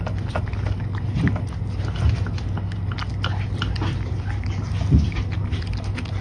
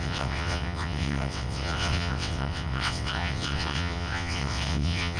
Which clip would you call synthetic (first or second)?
second